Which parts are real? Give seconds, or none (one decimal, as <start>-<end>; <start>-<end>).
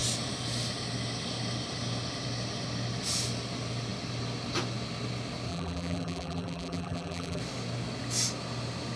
0.0-5.5; 7.4-9.0